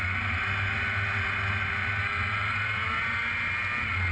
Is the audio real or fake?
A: real